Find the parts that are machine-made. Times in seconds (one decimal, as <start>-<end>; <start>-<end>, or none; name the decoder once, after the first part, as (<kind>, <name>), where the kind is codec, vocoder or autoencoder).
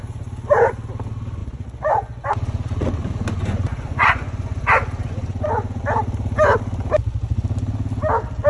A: 1.4-5.8 (vocoder, Vocos)